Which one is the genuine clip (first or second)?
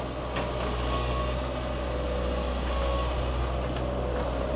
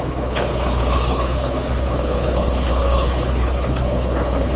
first